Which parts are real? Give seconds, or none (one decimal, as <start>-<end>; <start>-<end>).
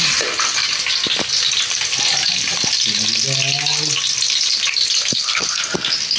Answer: 0.0-5.0; 5.6-6.2